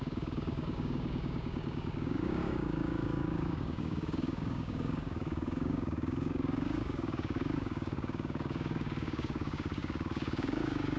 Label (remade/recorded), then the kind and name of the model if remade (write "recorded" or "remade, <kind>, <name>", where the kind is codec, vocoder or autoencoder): remade, codec, DAC